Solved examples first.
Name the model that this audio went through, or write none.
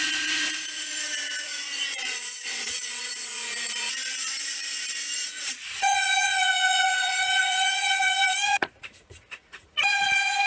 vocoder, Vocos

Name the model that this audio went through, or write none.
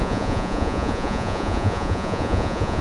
vocoder, Vocos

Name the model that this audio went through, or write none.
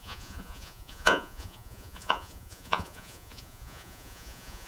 vocoder, Vocos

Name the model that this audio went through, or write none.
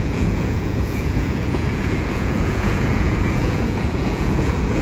vocoder, Vocos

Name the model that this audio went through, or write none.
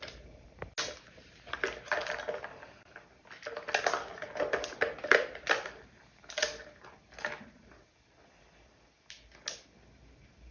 none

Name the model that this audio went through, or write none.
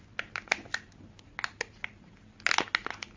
none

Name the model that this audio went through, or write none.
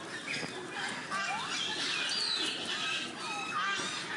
none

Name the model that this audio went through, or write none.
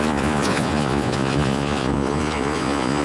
vocoder, Vocos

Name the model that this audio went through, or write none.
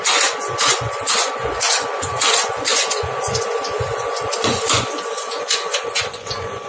vocoder, Vocos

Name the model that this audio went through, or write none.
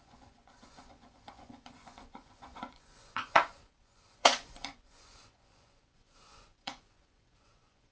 vocoder, Vocos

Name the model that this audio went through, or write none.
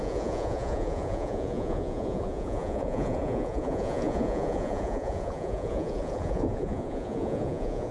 vocoder, Vocos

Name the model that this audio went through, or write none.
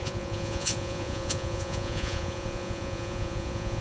vocoder, Vocos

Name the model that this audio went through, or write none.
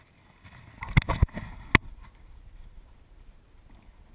none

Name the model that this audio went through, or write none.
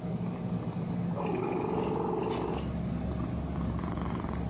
none